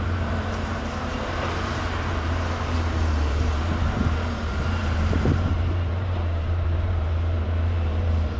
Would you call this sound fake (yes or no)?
yes